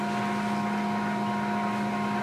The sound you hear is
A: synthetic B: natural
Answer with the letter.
B